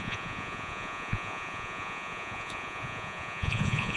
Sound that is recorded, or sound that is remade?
remade